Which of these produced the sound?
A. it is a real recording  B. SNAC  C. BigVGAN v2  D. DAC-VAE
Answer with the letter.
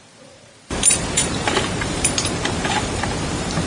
C